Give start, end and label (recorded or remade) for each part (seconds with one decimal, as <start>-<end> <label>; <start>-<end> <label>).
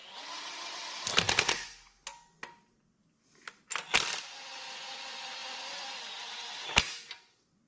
0.0-7.7 recorded